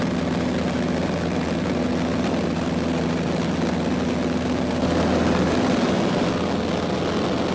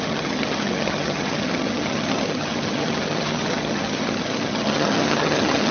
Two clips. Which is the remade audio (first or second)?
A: second